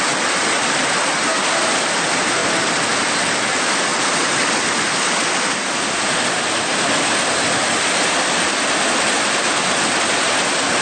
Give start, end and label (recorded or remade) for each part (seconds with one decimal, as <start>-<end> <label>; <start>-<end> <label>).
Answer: 0.0-10.8 recorded